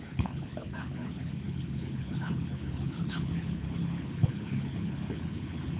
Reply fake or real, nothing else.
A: fake